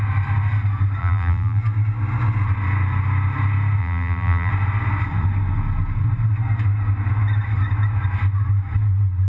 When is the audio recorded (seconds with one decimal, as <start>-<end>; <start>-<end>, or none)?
0.0-1.0; 1.6-3.8; 4.5-9.3